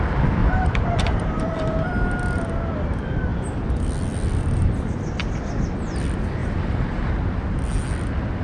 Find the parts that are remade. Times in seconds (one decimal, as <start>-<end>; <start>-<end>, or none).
0.4-1.9; 6.4-7.1